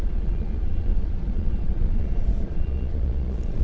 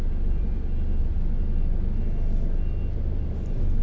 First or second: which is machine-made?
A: first